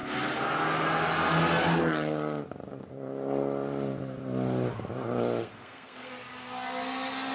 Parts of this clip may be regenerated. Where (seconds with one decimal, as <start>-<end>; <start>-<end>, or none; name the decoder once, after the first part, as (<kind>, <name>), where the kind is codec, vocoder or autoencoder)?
5.4-6.1 (codec, SNAC)

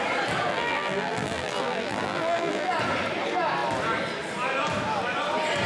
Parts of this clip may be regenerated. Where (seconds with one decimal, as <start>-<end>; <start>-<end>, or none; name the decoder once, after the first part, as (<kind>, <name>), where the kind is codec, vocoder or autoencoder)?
0.5-2.7 (vocoder, BigVGAN v2)